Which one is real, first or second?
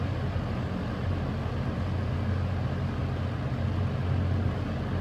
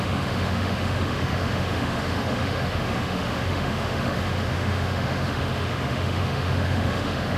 first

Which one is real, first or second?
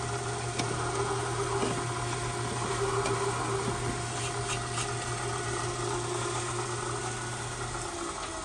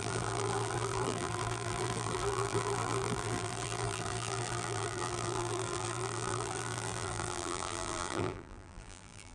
first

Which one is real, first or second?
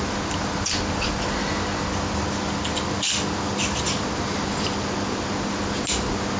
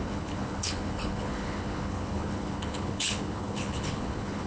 first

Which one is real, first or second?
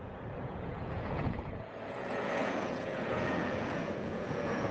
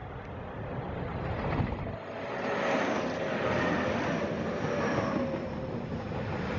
second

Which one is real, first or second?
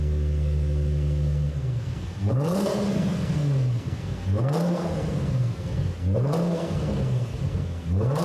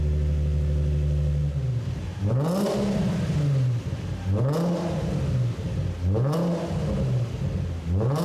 second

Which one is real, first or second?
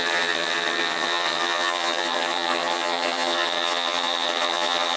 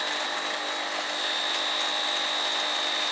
second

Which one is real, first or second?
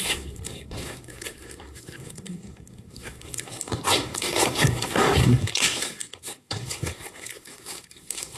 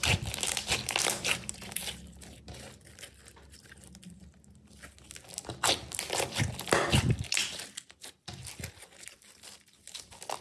second